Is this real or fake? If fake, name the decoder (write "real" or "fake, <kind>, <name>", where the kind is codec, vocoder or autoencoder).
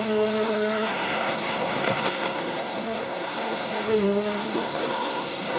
fake, codec, SNAC